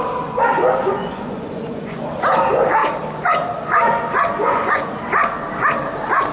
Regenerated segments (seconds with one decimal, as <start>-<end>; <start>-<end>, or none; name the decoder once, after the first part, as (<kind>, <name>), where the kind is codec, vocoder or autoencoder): 0.8-2.0 (vocoder, Vocos); 4.4-4.9